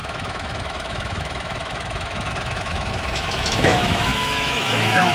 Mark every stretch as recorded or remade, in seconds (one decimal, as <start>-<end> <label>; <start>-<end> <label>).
0.0-5.1 remade

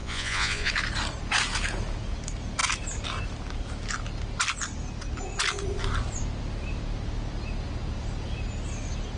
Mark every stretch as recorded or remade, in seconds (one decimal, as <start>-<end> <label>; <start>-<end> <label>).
0.0-0.7 remade; 0.7-9.2 recorded

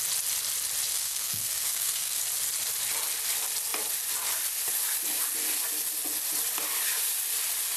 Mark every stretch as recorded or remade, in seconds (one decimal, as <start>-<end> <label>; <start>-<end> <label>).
0.0-0.9 recorded; 0.9-2.2 remade; 2.2-7.8 recorded

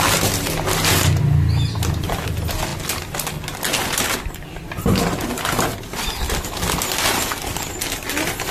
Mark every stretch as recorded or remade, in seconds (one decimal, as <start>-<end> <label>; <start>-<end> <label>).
0.0-8.5 recorded

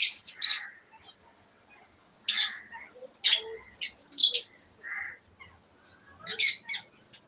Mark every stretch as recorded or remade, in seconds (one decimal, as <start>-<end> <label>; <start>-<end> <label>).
0.0-4.2 recorded; 4.2-4.7 remade; 4.7-7.3 recorded